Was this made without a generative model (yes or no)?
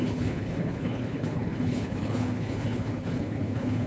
no